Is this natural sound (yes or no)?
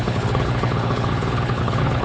no